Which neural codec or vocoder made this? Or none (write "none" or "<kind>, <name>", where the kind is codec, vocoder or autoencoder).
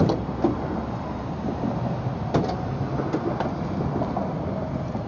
none